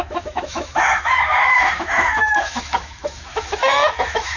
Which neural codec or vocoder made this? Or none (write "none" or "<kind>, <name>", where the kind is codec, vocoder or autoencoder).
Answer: autoencoder, DAC-VAE